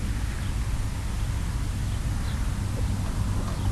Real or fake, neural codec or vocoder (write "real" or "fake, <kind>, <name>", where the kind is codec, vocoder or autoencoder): real